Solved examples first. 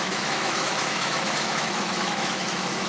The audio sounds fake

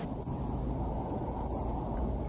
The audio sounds real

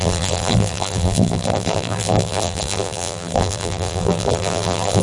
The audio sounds fake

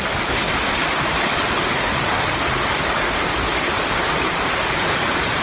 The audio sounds real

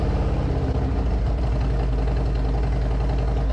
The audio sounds real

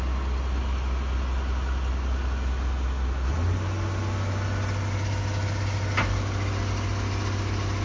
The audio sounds real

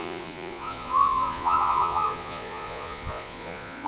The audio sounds fake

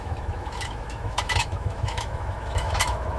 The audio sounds fake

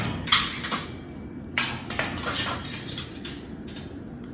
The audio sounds real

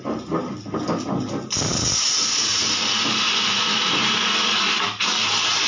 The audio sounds real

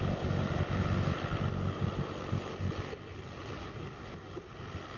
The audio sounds real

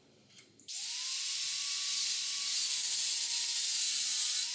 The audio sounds real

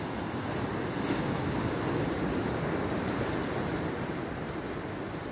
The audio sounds real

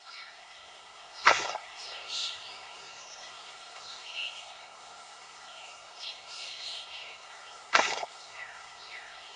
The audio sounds fake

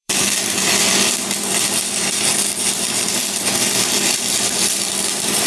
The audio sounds fake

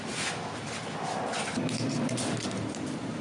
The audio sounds real